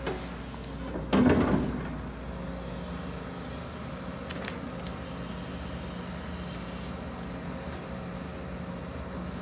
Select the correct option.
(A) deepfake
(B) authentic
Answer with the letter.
B